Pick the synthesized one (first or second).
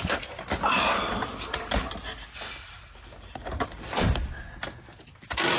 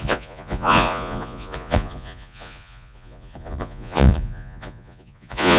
second